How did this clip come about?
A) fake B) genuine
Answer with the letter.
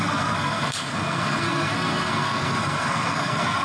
A